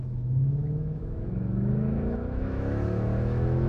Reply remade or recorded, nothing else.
remade